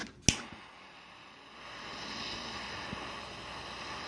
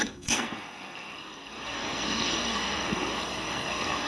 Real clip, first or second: first